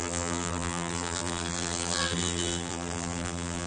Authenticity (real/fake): fake